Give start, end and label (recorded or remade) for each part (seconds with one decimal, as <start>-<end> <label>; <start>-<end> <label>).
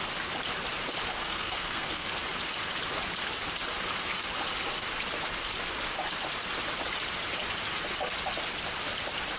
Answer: 0.0-1.2 recorded; 1.2-2.1 remade; 2.1-9.4 recorded